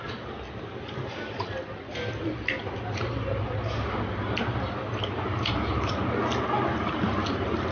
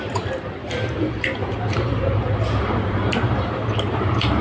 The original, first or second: first